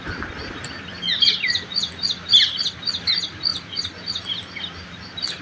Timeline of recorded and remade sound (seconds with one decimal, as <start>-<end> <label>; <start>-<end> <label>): 0.0-5.4 recorded